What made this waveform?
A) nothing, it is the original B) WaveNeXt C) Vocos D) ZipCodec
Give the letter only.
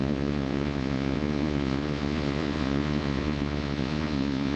C